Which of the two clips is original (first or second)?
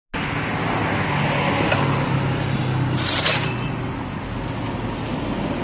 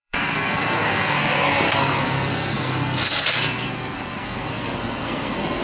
first